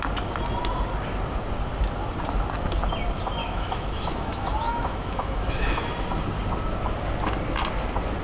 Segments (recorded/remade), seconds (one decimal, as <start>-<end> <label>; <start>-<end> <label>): 0.0-3.4 recorded; 3.4-5.8 remade; 5.8-8.2 recorded